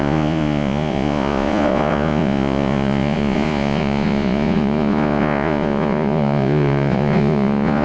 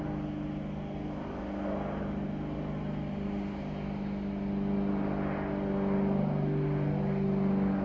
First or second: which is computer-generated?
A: first